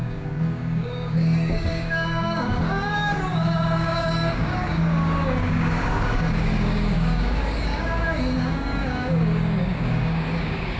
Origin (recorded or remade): remade